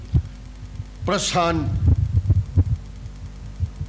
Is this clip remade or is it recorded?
recorded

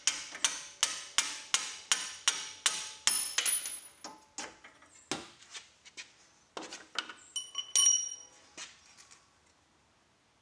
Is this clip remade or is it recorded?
recorded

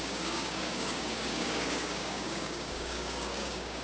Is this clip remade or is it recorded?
remade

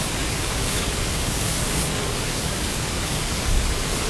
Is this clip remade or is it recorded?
remade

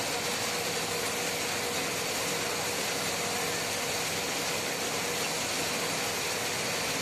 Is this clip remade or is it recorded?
recorded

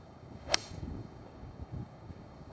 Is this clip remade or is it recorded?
remade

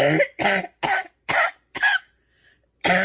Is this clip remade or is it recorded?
recorded